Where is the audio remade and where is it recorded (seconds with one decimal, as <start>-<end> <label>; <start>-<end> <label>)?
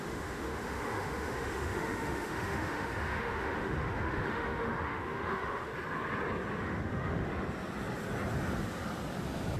0.0-5.7 remade; 5.7-6.6 recorded; 6.6-7.3 remade; 7.3-9.6 recorded